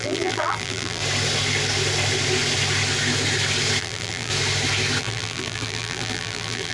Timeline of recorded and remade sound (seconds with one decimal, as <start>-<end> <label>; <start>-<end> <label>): 0.0-1.0 remade; 1.0-3.8 recorded; 3.8-4.3 remade; 4.3-5.0 recorded; 5.0-6.7 remade